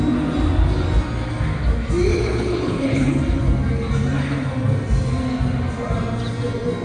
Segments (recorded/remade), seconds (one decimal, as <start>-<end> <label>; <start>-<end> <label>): 0.0-2.1 recorded; 2.1-3.2 remade; 3.2-6.8 recorded